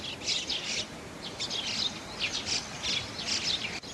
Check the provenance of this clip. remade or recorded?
recorded